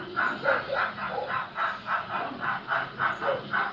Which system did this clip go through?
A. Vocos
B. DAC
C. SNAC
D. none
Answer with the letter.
D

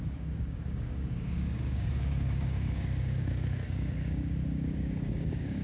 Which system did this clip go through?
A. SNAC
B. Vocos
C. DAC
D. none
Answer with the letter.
C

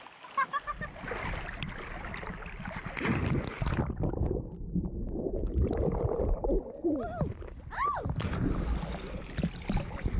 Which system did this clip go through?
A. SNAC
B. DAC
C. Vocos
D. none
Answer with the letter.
D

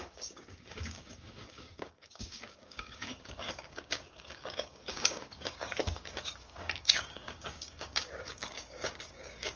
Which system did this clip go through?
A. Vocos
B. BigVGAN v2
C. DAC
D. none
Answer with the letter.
C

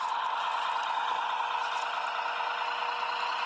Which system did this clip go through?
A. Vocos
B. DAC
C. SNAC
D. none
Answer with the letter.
D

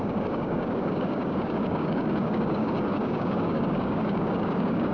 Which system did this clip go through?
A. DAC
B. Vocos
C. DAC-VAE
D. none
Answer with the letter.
A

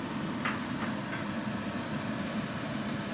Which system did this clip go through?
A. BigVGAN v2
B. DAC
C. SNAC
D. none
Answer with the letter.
D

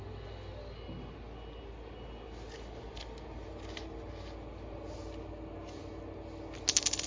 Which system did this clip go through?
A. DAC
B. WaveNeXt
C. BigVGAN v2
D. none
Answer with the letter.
D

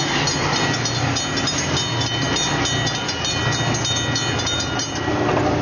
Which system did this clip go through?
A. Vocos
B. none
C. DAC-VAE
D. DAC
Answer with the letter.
B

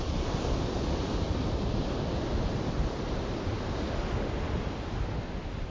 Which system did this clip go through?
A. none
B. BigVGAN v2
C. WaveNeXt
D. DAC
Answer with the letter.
A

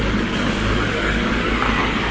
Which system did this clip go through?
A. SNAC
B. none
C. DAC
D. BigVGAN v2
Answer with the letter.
C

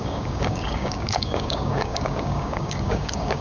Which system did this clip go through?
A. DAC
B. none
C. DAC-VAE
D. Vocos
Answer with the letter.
A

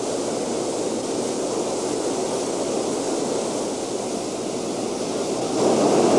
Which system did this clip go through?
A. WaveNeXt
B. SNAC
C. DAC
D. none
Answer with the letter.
D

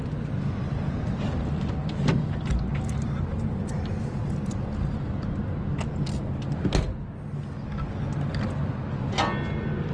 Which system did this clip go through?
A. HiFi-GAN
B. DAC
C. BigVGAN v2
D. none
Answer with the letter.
D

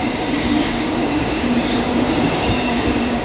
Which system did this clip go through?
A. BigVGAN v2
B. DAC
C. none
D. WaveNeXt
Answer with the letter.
B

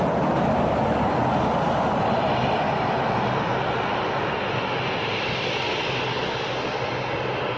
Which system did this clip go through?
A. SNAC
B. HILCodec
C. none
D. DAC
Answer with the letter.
C